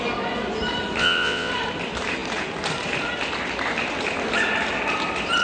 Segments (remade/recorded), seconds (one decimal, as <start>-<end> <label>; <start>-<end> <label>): 0.0-1.0 recorded; 1.0-1.5 remade; 1.5-5.4 recorded